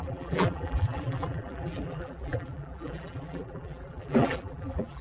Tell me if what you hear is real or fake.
fake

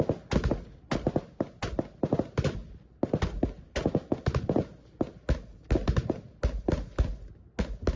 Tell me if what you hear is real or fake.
real